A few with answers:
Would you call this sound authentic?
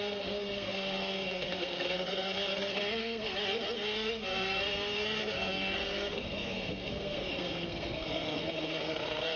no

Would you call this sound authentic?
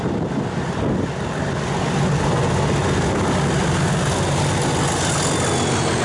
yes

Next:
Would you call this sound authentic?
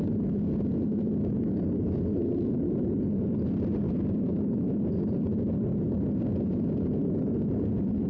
yes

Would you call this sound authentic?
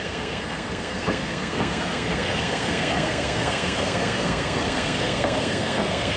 no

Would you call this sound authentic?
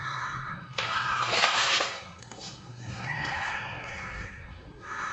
no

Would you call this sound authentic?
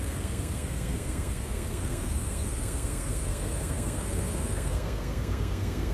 no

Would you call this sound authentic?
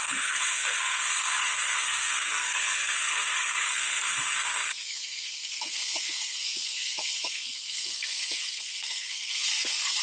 no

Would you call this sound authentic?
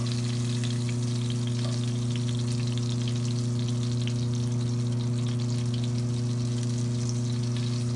yes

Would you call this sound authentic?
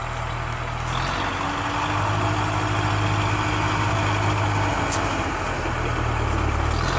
yes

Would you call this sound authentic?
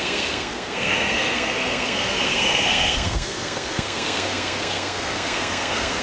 no